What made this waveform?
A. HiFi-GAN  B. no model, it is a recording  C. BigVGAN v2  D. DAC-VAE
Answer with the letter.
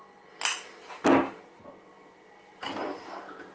B